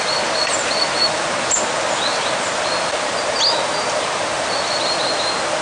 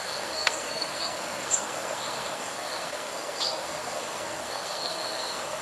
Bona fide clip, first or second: first